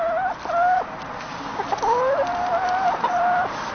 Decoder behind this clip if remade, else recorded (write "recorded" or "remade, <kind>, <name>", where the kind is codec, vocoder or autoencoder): recorded